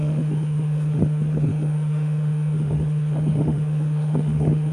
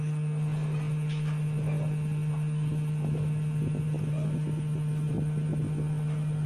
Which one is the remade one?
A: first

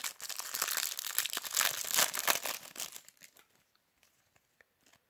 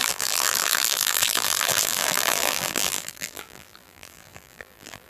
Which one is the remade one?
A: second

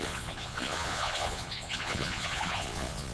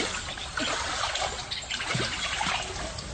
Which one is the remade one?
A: first